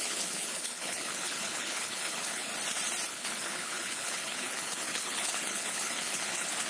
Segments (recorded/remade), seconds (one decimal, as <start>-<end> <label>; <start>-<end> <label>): 0.0-2.5 remade; 2.5-3.1 recorded; 3.1-6.7 remade